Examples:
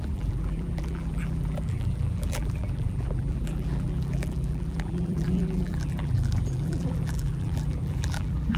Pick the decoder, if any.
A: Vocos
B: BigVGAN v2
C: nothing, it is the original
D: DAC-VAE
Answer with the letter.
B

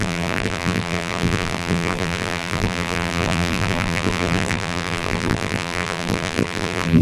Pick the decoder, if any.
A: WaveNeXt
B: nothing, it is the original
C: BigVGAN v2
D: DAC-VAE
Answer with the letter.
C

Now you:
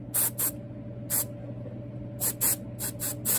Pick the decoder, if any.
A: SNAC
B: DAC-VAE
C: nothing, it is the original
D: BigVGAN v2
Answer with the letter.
C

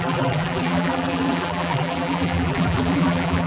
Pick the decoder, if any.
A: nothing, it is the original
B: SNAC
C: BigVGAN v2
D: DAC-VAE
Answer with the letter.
C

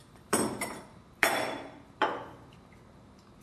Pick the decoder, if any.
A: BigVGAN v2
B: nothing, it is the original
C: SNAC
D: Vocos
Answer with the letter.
A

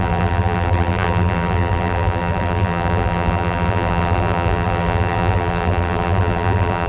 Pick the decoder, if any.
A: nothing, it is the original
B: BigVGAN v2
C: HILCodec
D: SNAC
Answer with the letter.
B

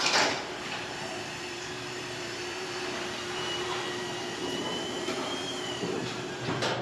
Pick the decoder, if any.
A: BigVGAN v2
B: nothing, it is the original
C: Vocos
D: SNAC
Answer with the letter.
A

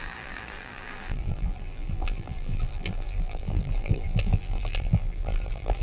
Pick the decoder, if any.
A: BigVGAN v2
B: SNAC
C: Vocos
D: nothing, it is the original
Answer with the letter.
A